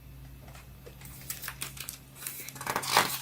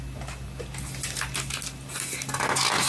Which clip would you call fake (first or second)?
first